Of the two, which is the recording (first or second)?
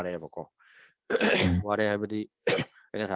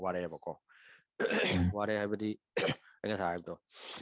second